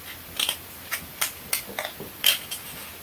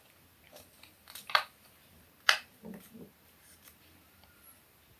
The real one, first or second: first